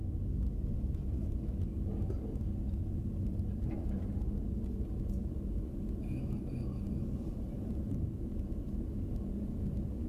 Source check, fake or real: real